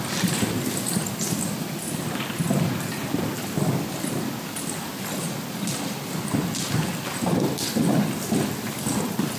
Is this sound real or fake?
real